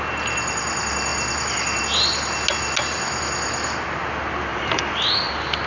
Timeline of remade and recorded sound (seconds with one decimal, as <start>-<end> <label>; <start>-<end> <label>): 0.0-4.5 recorded; 4.5-5.3 remade; 5.3-5.7 recorded